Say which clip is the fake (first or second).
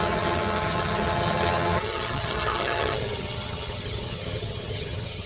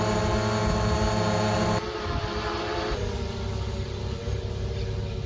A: first